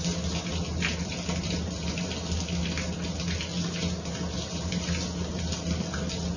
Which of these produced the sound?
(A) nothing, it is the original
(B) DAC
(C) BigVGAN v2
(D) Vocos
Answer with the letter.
A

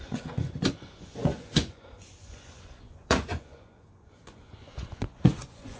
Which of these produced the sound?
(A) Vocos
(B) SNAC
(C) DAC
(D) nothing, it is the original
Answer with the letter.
A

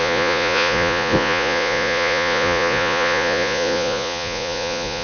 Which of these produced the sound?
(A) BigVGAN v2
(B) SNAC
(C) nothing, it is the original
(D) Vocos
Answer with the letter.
D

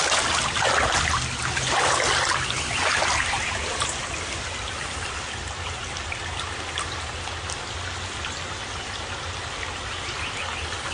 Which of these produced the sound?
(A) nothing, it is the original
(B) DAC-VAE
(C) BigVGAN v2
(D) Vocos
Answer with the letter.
A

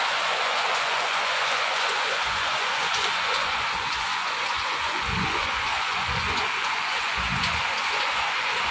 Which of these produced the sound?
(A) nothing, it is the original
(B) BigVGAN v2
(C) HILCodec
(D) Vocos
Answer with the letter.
D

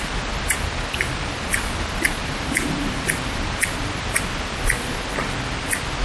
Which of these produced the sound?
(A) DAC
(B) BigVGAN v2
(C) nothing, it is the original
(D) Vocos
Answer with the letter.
C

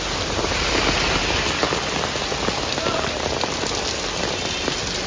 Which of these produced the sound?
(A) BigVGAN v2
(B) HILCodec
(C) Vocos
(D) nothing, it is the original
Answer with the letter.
D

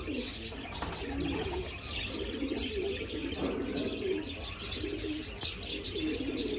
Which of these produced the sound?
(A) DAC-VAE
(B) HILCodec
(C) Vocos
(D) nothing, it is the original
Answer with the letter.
D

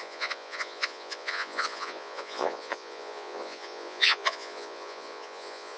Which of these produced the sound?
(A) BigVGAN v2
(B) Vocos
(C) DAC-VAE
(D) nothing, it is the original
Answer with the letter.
B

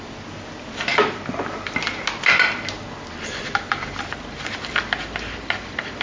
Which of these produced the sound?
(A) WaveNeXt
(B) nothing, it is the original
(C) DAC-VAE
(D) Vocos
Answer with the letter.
B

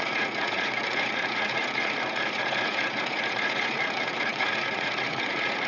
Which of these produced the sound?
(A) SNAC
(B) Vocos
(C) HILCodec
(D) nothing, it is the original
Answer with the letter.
B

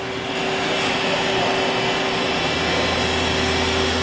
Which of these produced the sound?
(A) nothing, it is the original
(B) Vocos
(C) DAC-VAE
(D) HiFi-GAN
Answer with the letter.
A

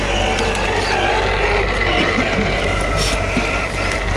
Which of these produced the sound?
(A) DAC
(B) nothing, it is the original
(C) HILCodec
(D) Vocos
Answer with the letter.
B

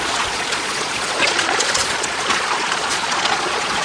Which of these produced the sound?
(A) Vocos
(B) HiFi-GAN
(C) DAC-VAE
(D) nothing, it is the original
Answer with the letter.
A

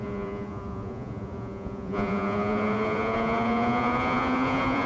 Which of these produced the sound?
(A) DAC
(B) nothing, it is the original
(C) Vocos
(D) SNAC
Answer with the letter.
C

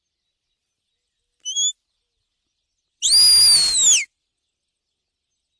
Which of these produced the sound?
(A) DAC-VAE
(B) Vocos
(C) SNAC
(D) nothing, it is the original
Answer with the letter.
D